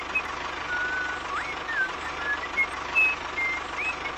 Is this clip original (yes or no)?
yes